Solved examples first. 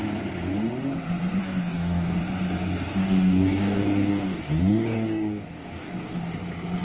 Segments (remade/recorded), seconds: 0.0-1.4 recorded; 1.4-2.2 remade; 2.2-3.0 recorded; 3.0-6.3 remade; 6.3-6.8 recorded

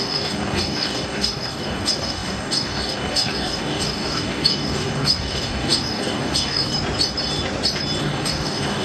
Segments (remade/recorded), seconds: 0.0-6.7 remade; 6.7-8.0 recorded; 8.0-8.8 remade